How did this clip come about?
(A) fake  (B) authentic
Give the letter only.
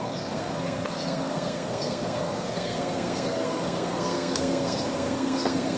A